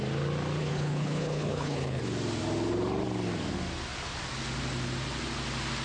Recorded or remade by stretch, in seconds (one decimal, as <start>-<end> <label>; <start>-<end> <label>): 0.0-0.6 recorded; 0.6-2.0 remade; 2.0-5.8 recorded